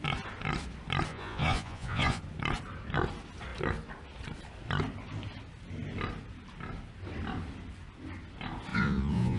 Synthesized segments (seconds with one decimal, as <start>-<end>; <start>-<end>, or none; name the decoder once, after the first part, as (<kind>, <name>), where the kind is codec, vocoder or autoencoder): 1.1-2.2 (vocoder, Vocos); 8.7-9.4